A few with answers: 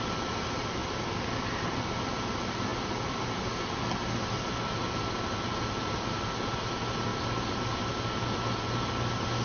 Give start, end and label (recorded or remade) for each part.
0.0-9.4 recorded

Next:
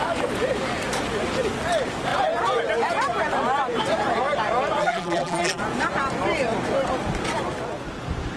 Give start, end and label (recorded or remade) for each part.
0.0-4.8 recorded; 4.8-5.6 remade; 5.6-8.4 recorded

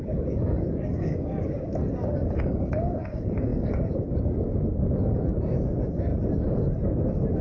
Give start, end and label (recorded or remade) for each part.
0.0-1.7 remade; 1.7-2.4 recorded; 2.4-6.1 remade; 6.1-7.4 recorded